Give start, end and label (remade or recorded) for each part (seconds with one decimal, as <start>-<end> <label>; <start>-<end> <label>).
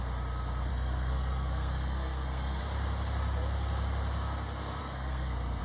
0.0-0.7 recorded; 0.7-2.6 remade; 2.6-4.8 recorded; 4.8-5.6 remade